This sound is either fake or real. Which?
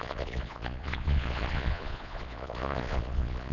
fake